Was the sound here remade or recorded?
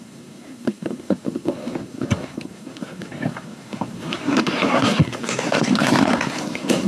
remade